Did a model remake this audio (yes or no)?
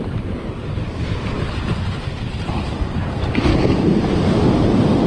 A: no